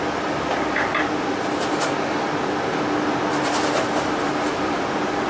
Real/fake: real